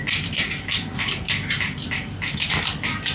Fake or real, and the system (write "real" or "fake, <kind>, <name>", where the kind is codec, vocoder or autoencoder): real